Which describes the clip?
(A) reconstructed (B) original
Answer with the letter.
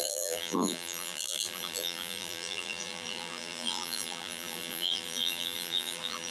A